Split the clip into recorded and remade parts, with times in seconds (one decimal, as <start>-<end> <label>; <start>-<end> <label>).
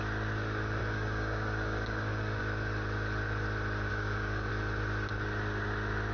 0.0-0.8 recorded; 0.8-2.4 remade; 2.4-3.9 recorded; 3.9-4.5 remade; 4.5-6.1 recorded